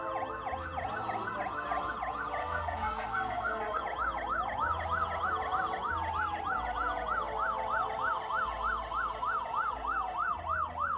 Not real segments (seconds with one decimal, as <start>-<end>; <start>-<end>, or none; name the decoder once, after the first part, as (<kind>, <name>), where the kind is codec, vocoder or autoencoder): 2.4-3.8 (codec, SNAC)